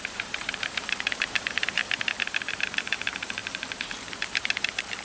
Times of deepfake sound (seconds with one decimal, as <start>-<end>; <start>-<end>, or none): 0.0-1.8; 2.5-3.4; 4.4-5.0